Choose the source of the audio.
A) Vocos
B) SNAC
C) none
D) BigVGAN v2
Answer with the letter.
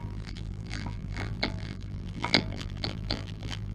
D